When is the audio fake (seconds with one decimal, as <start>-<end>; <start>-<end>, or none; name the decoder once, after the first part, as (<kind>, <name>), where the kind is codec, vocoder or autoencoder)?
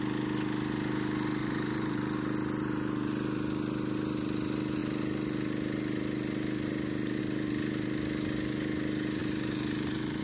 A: 1.4-2.0 (vocoder, BigVGAN v2); 9.2-10.2